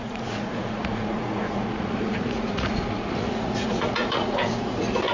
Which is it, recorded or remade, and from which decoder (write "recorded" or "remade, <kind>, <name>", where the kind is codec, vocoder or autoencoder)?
remade, vocoder, Vocos